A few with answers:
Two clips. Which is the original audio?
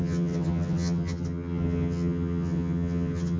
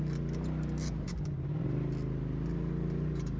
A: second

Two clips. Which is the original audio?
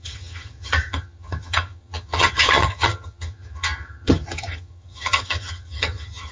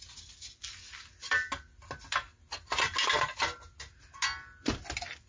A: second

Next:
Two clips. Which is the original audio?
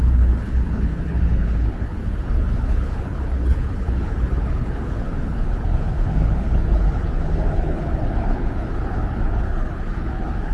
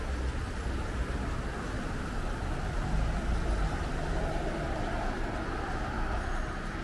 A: second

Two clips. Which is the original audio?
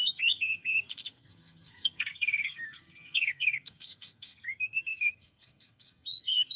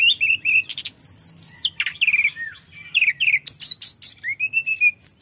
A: second